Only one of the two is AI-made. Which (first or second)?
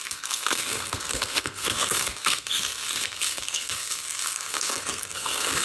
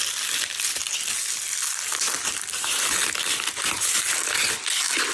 first